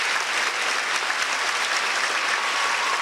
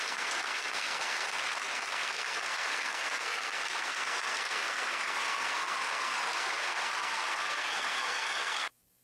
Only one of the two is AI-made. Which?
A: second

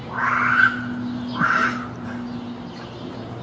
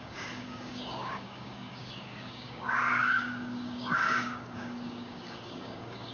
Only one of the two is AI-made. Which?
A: second